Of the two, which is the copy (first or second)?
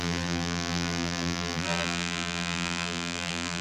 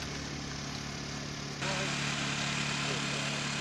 first